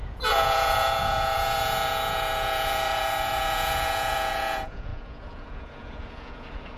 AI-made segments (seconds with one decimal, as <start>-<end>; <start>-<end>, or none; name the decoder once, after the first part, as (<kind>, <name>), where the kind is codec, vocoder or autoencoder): 0.0-6.8 (vocoder, Vocos)